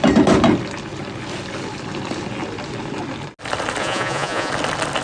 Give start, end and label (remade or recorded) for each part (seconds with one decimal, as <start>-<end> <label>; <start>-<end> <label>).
0.0-3.8 recorded; 3.8-4.5 remade; 4.5-5.0 recorded